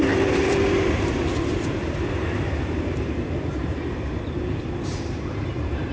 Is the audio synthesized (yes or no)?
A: yes